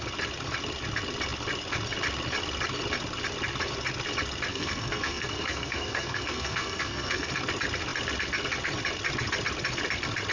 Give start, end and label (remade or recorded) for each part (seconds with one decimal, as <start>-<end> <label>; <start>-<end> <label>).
0.0-4.5 recorded; 4.5-7.3 remade; 7.3-10.3 recorded